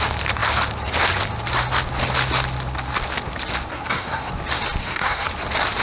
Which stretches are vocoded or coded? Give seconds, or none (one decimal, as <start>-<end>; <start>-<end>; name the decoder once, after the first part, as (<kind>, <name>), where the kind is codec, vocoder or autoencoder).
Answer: 3.7-4.3 (codec, SNAC); 4.8-5.3